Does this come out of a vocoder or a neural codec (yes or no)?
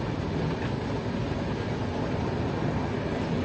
no